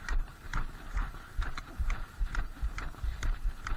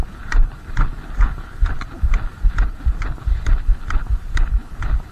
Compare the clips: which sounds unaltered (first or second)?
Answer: second